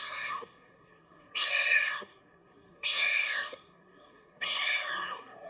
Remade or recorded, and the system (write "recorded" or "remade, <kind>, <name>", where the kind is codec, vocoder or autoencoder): remade, codec, SNAC